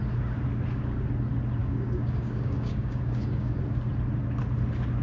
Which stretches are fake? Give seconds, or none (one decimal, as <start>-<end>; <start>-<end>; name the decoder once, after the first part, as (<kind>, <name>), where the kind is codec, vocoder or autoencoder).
1.6-3.6 (codec, DAC)